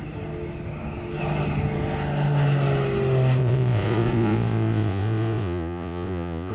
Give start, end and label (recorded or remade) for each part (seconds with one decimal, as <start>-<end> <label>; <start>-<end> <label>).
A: 0.0-3.4 recorded; 3.4-6.5 remade